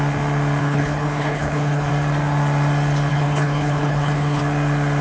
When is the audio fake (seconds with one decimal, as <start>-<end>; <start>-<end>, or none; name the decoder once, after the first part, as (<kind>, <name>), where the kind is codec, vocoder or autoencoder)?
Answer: 0.6-1.9 (codec, HILCodec); 3.1-4.4